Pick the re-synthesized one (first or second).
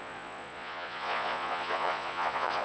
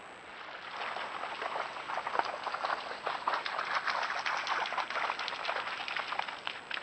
first